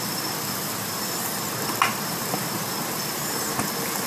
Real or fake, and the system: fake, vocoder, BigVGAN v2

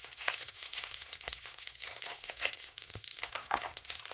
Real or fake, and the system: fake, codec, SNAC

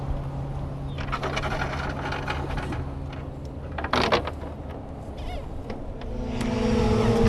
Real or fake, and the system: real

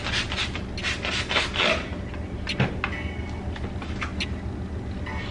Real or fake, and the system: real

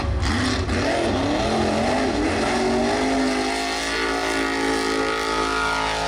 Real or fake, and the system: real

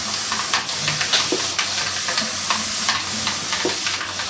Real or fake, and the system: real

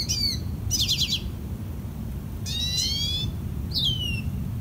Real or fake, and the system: real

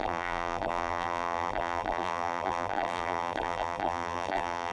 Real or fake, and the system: fake, vocoder, BigVGAN v2